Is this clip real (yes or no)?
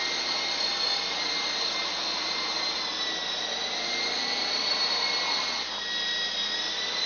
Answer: yes